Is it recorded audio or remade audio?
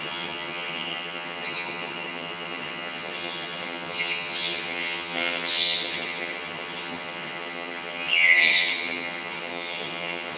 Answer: remade